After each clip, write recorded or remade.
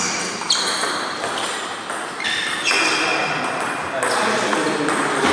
recorded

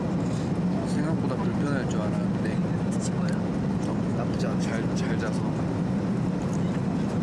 recorded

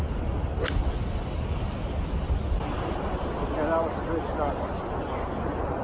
recorded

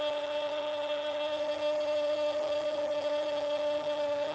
remade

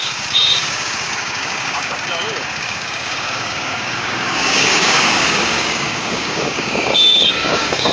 remade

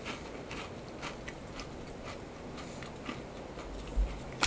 recorded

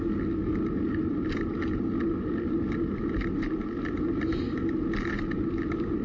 recorded